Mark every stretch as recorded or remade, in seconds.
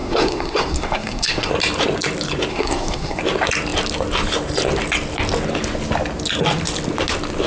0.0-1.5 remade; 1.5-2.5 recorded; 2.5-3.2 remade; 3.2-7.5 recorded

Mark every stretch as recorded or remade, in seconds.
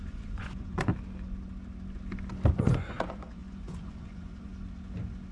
0.0-0.9 remade; 0.9-2.5 recorded; 2.5-4.5 remade; 4.5-5.3 recorded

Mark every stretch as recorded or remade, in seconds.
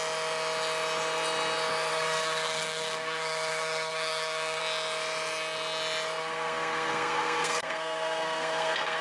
0.0-1.9 recorded; 1.9-4.6 remade; 4.6-6.2 recorded; 6.2-9.0 remade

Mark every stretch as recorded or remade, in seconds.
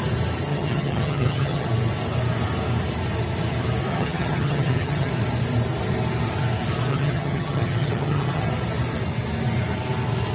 0.0-0.5 recorded; 0.5-1.7 remade; 1.7-3.9 recorded; 3.9-5.1 remade; 5.1-6.9 recorded; 6.9-8.5 remade; 8.5-10.3 recorded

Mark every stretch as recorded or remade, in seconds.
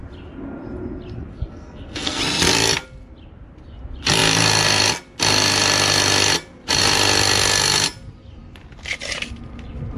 0.0-1.3 recorded; 1.3-2.2 remade; 2.2-10.0 recorded